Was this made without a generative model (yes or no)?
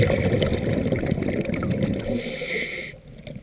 yes